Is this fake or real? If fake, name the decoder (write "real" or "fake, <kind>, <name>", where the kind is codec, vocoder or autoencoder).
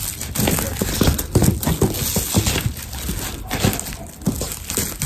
real